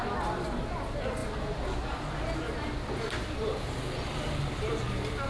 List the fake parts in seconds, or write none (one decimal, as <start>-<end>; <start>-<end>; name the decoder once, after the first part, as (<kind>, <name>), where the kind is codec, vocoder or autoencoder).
none

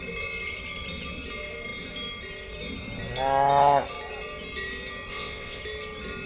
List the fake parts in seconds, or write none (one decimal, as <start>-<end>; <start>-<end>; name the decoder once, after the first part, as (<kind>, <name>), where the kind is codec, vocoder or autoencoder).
5.1-5.6 (vocoder, WaveNeXt)

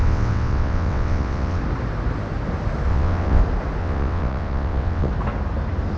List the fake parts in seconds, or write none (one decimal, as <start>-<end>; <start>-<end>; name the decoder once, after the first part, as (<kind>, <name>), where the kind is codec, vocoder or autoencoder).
0.0-1.6 (vocoder, WaveNeXt); 2.9-3.4; 3.8-5.1

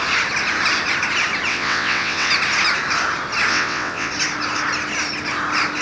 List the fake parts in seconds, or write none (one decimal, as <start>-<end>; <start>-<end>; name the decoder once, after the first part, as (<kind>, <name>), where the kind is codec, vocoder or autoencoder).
1.5-2.3 (vocoder, WaveNeXt); 3.5-4.1

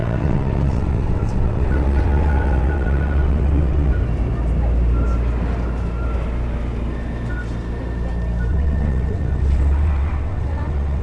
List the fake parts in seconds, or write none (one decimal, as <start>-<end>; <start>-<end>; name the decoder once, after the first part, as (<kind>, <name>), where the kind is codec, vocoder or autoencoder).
0.0-3.9 (vocoder, WaveNeXt); 8.5-11.0

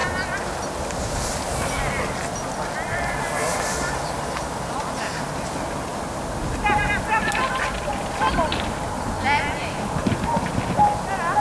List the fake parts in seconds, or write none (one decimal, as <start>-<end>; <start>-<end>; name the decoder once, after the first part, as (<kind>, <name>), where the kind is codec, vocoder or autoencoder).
none

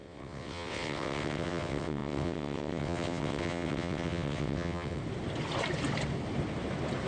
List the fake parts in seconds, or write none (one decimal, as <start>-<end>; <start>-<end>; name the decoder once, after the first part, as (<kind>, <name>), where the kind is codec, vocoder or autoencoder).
0.0-5.0 (vocoder, WaveNeXt)